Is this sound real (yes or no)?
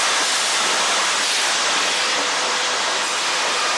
yes